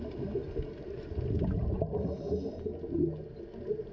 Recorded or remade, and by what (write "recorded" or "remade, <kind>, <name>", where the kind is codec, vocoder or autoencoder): recorded